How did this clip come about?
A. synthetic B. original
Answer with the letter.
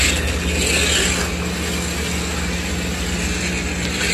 B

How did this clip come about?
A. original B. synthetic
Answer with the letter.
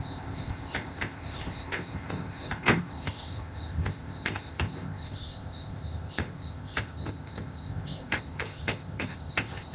B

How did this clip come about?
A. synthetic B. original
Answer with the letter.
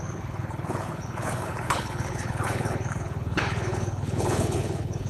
A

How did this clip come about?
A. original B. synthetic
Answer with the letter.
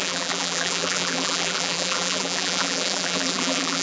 B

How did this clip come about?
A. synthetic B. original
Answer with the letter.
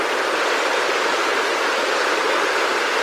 B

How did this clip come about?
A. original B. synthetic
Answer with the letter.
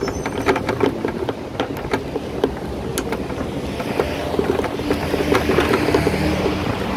A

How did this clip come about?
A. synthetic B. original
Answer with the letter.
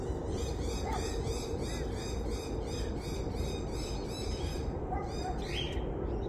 B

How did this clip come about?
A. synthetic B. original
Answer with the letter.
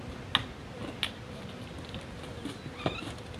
B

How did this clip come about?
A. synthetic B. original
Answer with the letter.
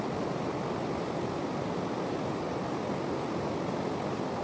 B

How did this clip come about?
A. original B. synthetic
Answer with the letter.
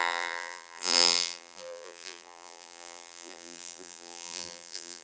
B